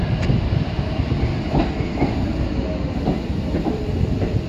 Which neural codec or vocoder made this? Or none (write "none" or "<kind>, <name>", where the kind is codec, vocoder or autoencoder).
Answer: vocoder, BigVGAN v2